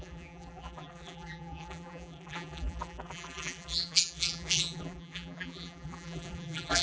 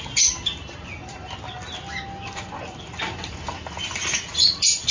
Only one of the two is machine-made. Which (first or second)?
first